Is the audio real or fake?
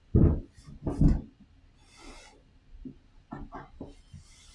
real